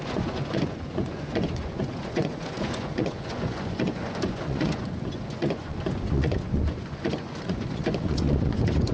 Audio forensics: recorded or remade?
remade